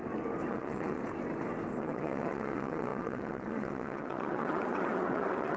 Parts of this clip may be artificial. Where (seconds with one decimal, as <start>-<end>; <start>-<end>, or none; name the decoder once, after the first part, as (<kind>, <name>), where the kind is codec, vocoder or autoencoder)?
0.5-1.0 (vocoder, WaveNeXt); 1.8-5.6